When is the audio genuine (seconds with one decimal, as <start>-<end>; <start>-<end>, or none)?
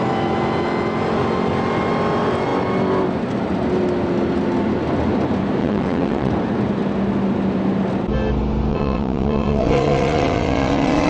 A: 0.0-5.6; 6.3-8.7